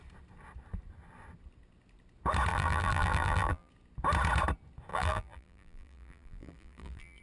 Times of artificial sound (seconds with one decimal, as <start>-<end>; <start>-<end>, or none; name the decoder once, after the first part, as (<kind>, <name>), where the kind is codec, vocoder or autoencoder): 2.5-3.7 (vocoder, BigVGAN v2); 4.9-7.2